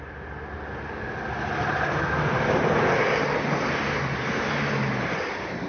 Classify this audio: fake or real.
real